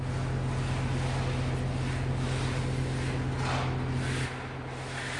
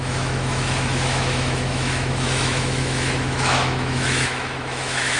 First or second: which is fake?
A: second